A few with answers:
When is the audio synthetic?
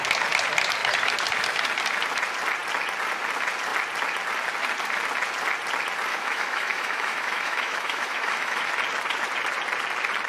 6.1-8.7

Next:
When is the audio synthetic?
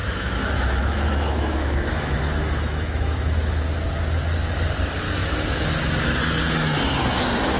0.0-3.6; 5.2-5.7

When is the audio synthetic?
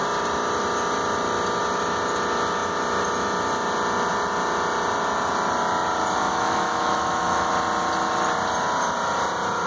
6.2-7.5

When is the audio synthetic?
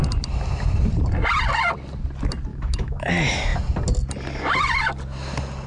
2.5-3.0